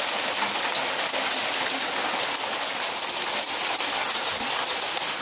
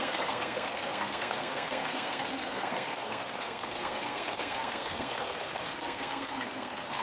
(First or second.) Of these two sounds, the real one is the first